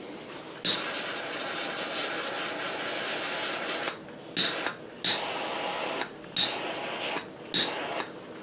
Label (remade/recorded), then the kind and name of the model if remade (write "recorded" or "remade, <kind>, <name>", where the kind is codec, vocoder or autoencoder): recorded